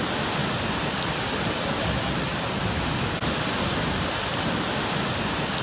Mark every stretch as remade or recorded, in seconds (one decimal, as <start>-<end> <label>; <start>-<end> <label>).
0.0-5.6 recorded